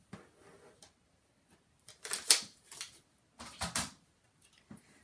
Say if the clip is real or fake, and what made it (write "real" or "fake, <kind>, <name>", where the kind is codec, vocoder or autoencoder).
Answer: real